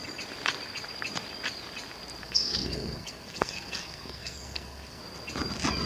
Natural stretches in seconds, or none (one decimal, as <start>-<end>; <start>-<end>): 0.0-2.2; 5.0-5.9